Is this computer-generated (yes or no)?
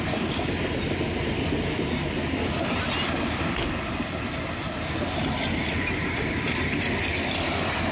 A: no